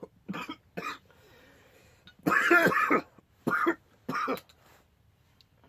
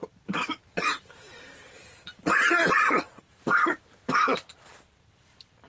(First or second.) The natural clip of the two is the first